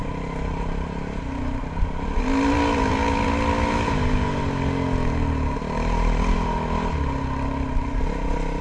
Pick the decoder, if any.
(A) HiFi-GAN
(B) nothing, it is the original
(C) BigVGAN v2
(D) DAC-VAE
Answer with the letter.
B